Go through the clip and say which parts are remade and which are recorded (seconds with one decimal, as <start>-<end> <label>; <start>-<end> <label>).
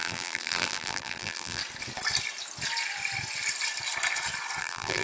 0.0-1.6 remade; 1.6-4.6 recorded; 4.6-5.0 remade